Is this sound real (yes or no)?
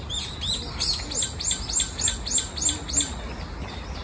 yes